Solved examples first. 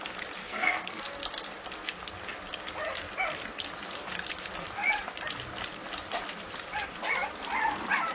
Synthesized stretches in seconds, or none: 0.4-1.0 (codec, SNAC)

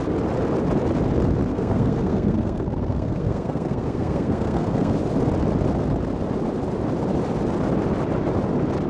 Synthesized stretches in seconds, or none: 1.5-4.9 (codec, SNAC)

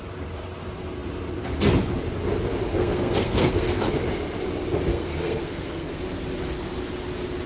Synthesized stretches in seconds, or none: 2.7-3.8 (codec, SNAC); 4.9-6.0

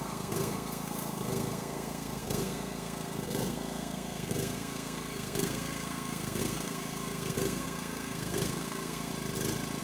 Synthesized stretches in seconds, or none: 0.0-9.1 (codec, SNAC)